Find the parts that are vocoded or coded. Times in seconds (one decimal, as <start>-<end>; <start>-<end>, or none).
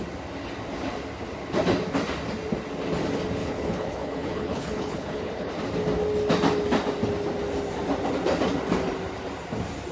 3.4-5.5